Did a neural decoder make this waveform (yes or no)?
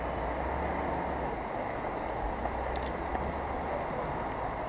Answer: no